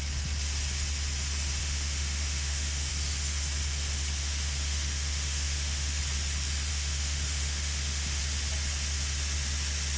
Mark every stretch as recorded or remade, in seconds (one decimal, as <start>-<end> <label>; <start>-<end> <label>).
0.0-1.6 recorded; 1.6-2.9 remade; 2.9-4.2 recorded; 4.2-6.0 remade; 6.0-6.7 recorded; 6.7-8.2 remade; 8.2-10.0 recorded